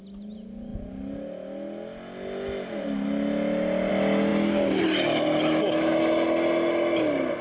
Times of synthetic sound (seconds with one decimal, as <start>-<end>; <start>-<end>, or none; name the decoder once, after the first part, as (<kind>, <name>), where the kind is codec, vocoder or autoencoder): none